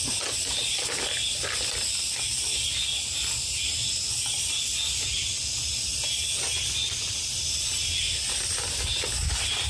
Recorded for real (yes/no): yes